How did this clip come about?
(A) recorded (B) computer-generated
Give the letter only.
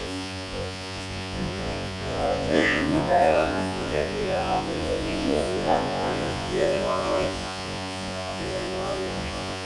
B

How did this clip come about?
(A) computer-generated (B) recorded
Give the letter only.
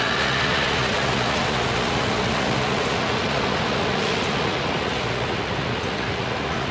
A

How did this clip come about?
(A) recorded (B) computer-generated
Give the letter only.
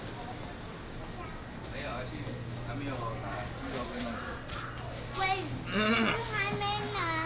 A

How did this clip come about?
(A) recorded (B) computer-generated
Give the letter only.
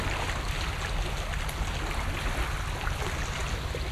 A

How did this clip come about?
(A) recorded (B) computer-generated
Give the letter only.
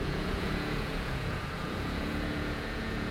B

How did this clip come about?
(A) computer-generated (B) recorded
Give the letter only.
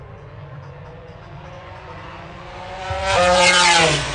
A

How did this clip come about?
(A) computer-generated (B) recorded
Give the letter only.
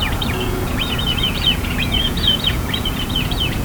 A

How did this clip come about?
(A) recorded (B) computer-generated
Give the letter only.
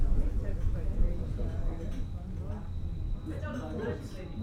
A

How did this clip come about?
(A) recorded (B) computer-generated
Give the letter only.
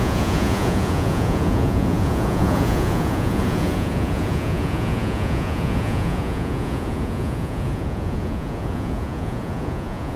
B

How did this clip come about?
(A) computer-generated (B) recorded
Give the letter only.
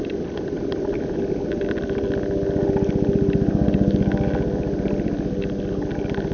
B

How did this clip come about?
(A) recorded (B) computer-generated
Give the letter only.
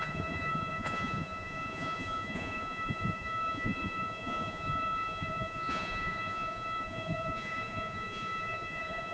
B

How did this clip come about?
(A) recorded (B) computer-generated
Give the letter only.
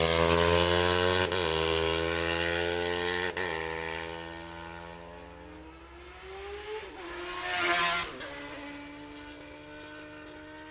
A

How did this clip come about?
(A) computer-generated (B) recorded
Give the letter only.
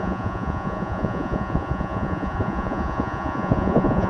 A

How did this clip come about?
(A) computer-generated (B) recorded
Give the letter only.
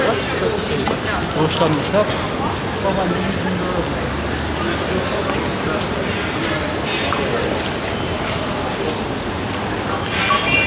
B